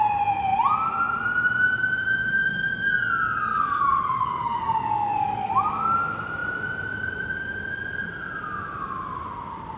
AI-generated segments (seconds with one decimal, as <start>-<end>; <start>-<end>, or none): 3.5-5.5